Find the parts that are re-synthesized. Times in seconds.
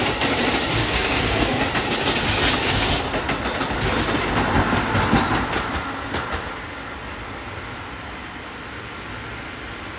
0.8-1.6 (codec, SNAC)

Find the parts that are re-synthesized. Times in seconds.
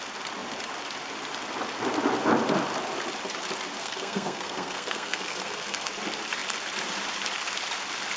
3.8-5.9 (codec, SNAC)